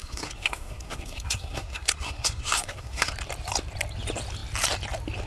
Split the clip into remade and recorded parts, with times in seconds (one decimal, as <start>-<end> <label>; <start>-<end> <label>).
0.0-3.1 remade; 3.1-5.3 recorded